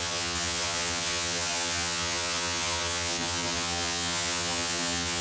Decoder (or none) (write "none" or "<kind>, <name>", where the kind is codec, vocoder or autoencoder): vocoder, HiFi-GAN